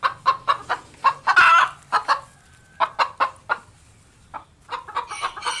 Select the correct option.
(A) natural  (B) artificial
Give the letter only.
A